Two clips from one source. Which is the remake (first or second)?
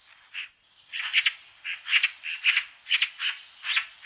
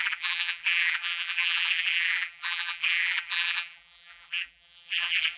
second